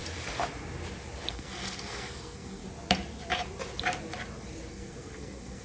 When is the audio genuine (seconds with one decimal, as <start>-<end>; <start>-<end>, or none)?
0.0-1.3; 2.6-4.7